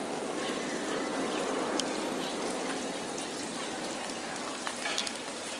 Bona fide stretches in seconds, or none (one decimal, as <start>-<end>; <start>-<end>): 0.0-5.6